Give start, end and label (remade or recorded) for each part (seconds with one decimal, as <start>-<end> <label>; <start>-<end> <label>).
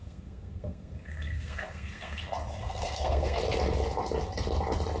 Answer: 0.0-2.2 remade; 2.2-2.6 recorded; 2.6-3.4 remade; 3.4-5.0 recorded